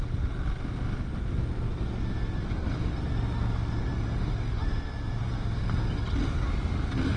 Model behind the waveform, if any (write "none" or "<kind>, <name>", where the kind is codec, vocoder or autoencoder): none